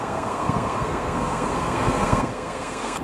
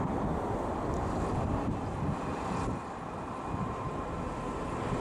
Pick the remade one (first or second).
first